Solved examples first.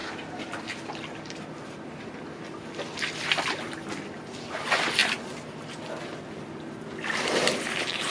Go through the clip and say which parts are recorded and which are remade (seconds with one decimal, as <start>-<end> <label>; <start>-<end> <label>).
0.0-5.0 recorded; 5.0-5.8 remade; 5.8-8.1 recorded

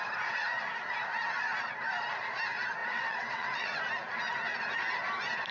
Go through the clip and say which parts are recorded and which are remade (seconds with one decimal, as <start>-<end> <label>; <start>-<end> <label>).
0.0-2.8 recorded; 2.8-3.8 remade; 3.8-5.5 recorded

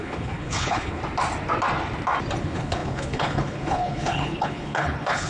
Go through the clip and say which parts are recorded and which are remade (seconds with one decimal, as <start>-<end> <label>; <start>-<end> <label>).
0.0-1.0 remade; 1.0-2.4 recorded; 2.4-5.3 remade

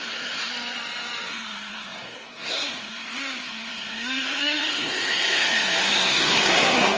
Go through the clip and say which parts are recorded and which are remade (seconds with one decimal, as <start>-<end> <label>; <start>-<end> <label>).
0.0-0.5 remade; 0.5-1.3 recorded; 1.3-7.0 remade